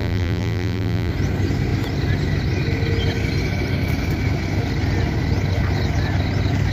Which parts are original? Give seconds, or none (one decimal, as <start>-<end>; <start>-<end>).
1.1-6.7